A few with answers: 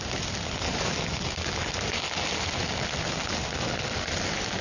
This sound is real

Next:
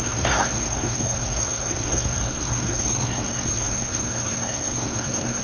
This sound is fake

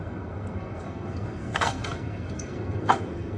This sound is fake